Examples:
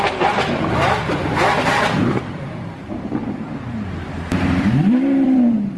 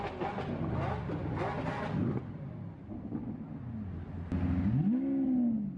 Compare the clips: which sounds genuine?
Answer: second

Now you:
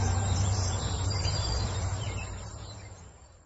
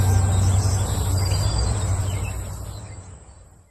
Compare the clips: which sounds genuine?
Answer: second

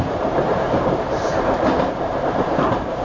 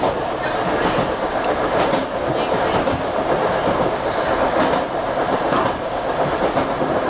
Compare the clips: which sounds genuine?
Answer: second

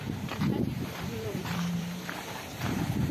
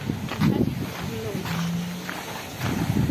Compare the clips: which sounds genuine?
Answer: second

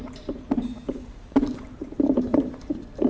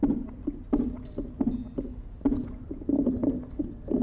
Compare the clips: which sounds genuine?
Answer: second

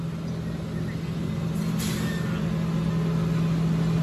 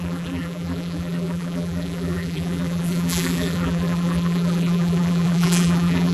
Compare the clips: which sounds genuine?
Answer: first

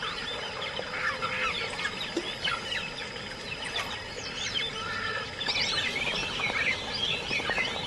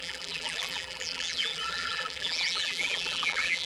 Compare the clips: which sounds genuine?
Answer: first